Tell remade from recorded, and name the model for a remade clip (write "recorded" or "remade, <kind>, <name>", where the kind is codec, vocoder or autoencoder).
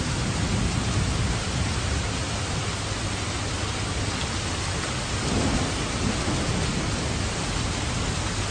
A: recorded